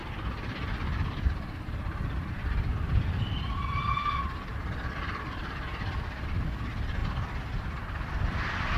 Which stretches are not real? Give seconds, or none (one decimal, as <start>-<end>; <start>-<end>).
2.7-5.2; 7.0-8.8